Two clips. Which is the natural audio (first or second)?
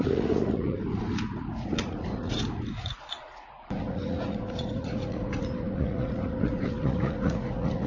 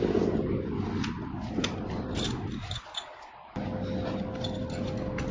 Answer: second